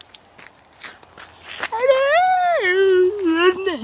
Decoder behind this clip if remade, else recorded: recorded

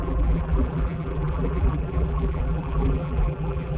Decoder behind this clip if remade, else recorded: remade, vocoder, BigVGAN v2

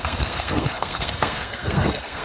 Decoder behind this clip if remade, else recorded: remade, codec, SNAC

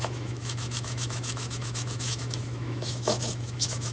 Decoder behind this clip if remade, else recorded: remade, autoencoder, DAC-VAE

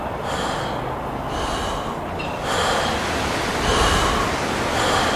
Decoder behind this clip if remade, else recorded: recorded